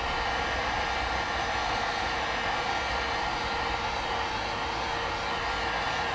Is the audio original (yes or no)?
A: yes